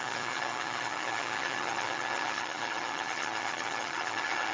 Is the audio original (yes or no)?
no